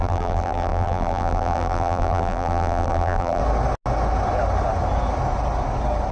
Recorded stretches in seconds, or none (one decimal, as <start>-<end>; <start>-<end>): 3.4-6.1